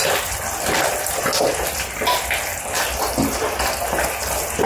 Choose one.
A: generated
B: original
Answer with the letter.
B